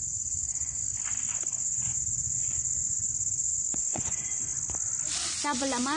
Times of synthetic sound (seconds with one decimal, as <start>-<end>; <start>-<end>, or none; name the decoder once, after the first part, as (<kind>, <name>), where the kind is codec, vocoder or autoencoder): 0.0-0.8 (vocoder, Vocos); 1.6-4.5